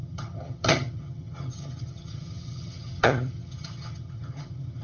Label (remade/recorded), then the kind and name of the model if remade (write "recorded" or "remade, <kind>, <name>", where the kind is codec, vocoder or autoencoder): remade, vocoder, HiFi-GAN